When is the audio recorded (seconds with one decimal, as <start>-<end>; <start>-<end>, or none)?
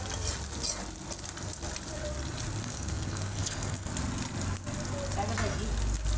0.0-2.6; 3.9-6.2